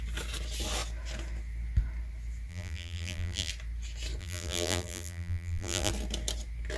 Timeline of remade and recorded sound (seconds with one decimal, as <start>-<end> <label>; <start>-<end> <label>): 0.0-2.5 recorded; 2.5-3.5 remade; 3.5-4.2 recorded; 4.2-5.9 remade; 5.9-6.8 recorded